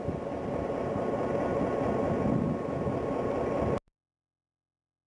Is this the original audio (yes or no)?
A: yes